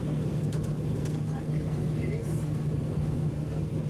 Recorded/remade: remade